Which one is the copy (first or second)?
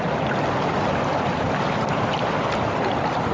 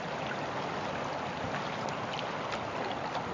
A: first